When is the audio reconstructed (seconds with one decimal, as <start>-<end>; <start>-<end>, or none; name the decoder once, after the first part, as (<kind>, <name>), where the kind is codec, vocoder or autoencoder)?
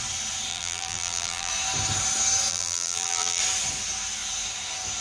0.5-1.5 (vocoder, BigVGAN v2); 2.5-3.4